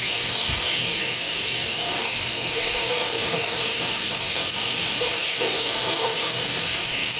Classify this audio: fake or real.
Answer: fake